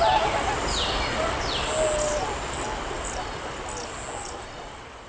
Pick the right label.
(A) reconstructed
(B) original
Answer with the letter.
B